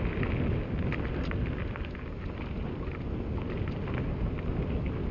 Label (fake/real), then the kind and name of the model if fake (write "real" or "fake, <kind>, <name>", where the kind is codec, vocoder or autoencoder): real